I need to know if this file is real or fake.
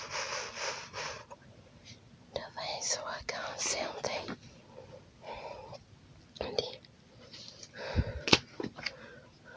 real